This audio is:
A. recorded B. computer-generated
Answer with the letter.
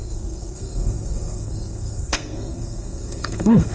B